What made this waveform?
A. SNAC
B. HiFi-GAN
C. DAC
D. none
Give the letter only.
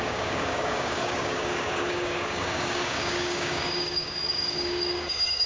C